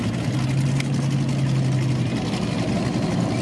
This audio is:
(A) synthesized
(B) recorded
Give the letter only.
B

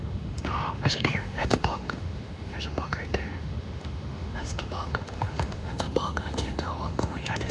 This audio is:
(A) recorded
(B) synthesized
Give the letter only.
B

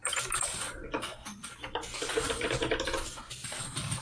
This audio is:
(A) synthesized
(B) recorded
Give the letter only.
B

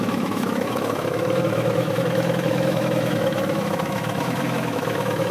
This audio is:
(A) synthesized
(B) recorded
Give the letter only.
A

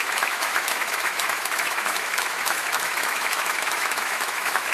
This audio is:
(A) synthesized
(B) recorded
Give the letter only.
A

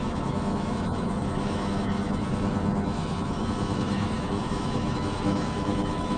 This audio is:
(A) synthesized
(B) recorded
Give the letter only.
A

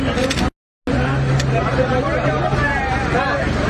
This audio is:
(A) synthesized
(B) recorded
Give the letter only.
B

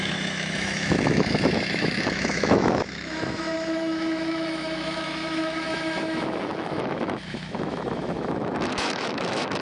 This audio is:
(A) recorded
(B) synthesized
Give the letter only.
B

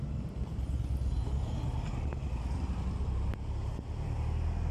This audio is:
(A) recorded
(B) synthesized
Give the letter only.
A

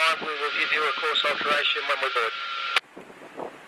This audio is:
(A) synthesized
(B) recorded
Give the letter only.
B